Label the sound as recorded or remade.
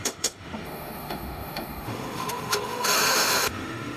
remade